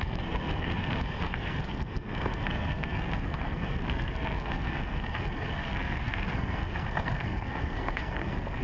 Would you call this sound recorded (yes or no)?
no